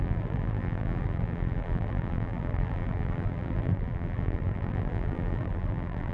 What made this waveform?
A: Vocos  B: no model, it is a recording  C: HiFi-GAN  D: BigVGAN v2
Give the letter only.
D